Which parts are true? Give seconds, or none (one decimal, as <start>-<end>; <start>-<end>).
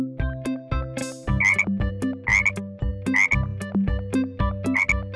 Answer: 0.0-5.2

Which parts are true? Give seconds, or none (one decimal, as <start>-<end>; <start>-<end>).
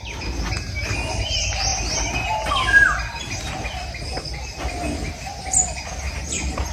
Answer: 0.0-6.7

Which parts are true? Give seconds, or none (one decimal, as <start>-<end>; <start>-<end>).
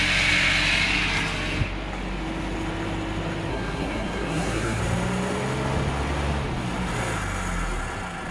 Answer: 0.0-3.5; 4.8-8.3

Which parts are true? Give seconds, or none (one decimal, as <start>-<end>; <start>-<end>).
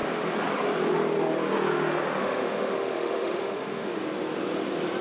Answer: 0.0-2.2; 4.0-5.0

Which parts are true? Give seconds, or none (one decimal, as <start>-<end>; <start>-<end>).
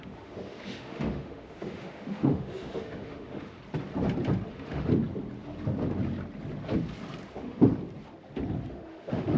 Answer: 3.6-4.5; 4.9-7.3; 7.7-8.7